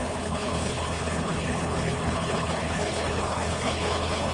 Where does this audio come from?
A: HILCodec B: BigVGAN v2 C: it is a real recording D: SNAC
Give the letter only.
A